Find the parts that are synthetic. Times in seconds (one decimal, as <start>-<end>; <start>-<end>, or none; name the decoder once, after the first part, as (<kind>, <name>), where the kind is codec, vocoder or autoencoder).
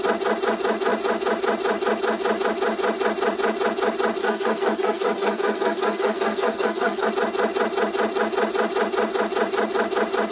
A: 4.2-7.1 (codec, SNAC)